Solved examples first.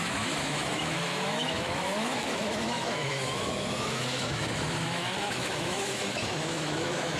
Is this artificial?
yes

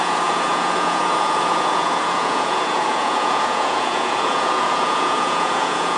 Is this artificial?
yes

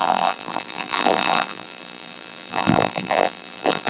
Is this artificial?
yes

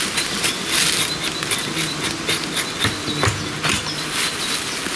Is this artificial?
no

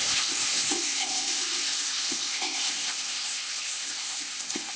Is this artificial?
yes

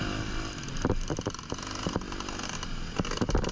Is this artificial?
no